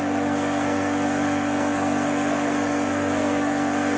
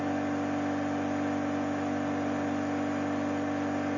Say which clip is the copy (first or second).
first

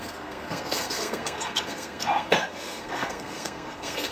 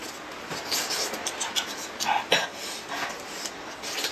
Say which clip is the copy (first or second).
first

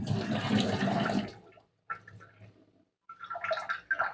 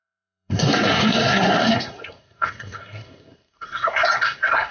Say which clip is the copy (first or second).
second